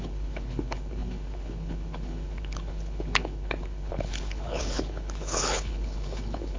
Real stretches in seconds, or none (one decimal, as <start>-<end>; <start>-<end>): none